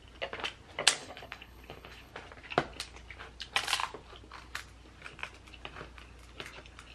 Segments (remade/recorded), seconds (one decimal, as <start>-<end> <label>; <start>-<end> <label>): 0.0-1.0 recorded; 1.0-2.1 remade; 2.1-6.9 recorded